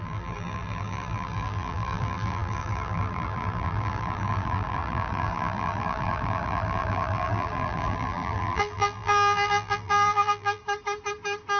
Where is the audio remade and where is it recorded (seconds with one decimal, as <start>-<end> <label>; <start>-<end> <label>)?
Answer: 0.0-10.6 remade; 10.6-11.6 recorded